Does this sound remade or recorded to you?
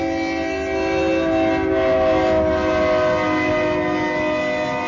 recorded